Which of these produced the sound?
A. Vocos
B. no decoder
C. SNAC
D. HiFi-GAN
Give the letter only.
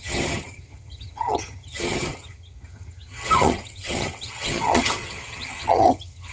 D